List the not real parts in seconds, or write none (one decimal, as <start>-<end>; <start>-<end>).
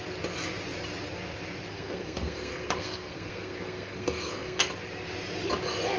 1.7-4.7